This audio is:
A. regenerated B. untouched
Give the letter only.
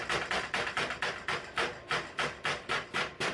B